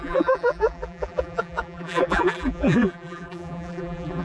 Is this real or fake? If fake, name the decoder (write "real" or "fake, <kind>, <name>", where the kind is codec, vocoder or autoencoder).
fake, vocoder, BigVGAN v2